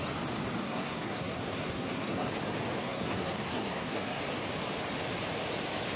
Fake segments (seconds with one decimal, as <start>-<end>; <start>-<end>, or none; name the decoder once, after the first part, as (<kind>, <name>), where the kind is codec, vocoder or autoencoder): 0.6-2.3 (codec, SNAC); 2.8-4.2